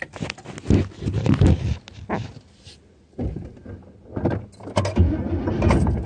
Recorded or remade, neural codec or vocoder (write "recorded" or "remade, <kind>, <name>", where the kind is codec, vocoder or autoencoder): recorded